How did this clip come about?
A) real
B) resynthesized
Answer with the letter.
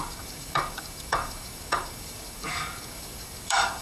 B